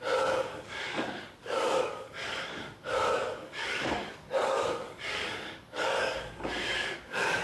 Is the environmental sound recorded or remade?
remade